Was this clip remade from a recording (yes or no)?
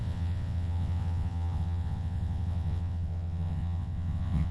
yes